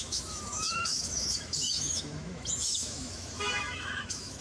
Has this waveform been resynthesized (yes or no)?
yes